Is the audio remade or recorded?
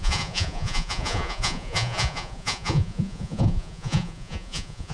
remade